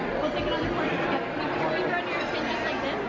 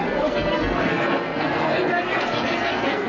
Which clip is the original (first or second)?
first